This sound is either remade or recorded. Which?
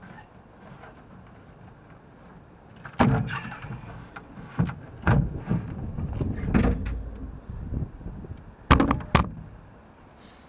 recorded